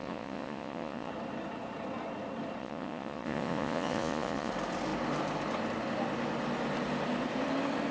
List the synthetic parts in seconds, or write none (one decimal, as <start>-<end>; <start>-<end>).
0.0-1.1; 2.6-4.5